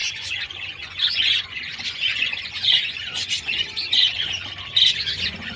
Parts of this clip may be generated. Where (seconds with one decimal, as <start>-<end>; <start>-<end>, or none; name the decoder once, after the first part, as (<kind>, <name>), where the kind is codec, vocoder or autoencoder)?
0.0-4.4 (vocoder, Vocos); 5.0-5.6